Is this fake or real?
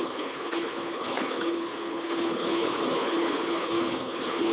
fake